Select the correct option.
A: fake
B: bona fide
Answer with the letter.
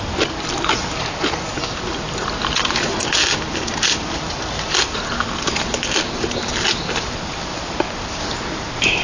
B